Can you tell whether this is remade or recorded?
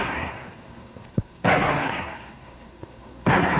remade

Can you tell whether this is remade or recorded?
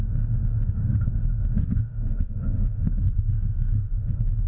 remade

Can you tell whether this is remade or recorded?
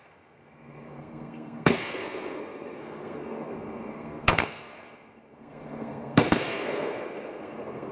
remade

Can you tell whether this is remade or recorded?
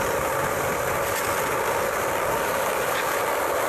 recorded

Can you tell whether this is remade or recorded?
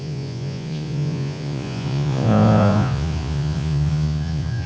remade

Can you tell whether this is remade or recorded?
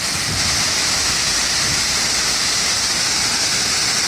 recorded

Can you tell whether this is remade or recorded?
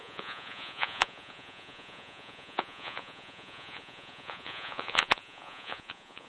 remade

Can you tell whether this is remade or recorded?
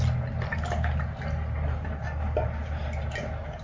recorded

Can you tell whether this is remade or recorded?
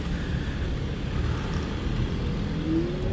recorded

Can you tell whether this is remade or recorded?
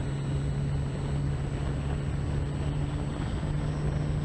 recorded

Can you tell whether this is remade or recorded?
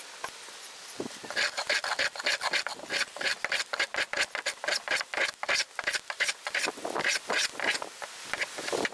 recorded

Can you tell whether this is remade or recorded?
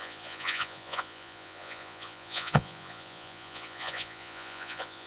remade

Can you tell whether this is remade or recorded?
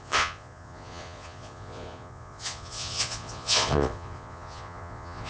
remade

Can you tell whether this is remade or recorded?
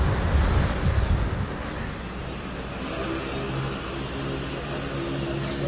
recorded